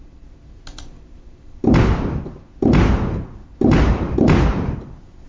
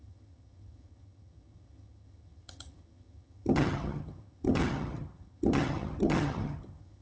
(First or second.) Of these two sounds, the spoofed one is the second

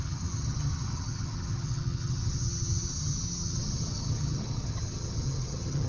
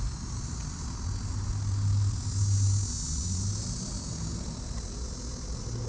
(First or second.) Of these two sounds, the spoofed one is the first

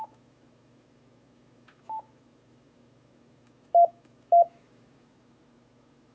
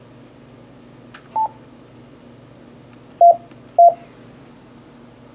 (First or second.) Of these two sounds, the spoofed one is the first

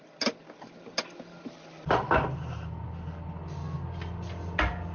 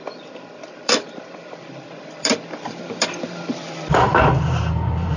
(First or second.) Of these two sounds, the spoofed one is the second